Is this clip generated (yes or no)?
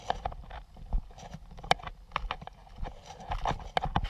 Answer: no